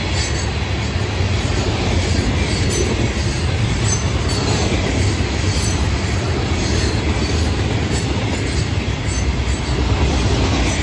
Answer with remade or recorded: recorded